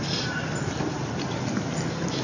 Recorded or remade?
recorded